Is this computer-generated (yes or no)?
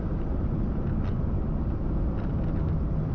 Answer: no